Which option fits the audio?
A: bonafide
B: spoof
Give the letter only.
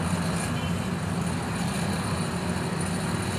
A